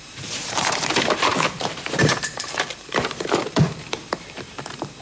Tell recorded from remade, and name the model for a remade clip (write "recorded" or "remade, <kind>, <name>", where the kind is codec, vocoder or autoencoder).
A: remade, vocoder, BigVGAN v2